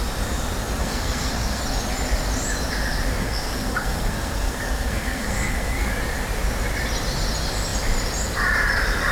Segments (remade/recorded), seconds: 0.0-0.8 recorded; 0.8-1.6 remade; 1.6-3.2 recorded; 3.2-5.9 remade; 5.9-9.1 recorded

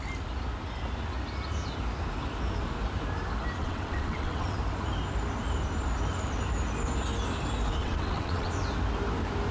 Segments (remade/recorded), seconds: 0.0-3.6 recorded; 3.6-4.6 remade; 4.6-7.8 recorded; 7.8-8.5 remade; 8.5-9.5 recorded

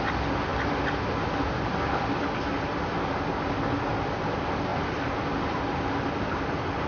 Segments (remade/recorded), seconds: 0.0-6.9 recorded

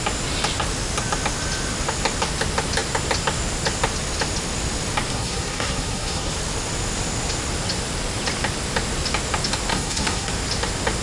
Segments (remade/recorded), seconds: 0.0-5.1 recorded; 5.1-6.3 remade; 6.3-9.7 recorded; 9.7-10.3 remade; 10.3-11.0 recorded